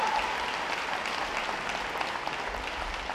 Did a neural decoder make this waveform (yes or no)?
no